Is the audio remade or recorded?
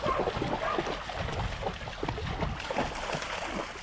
recorded